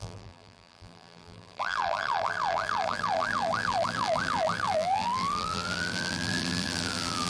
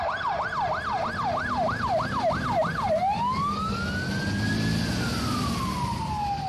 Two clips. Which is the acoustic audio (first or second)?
second